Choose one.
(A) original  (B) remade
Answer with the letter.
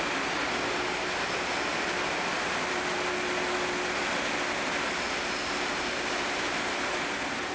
A